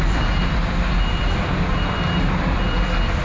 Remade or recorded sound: recorded